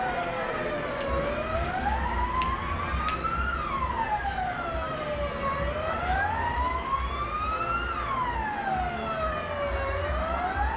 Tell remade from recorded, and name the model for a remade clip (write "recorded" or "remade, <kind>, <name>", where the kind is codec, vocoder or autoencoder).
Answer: recorded